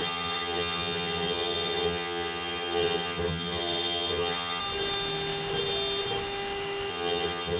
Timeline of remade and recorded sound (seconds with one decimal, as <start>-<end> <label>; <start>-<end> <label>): 0.0-4.6 remade; 4.6-6.9 recorded; 6.9-7.6 remade